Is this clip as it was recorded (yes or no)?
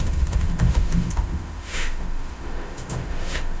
no